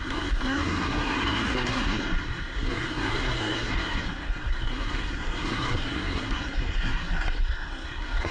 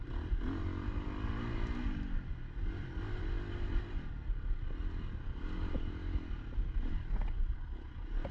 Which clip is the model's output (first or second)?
first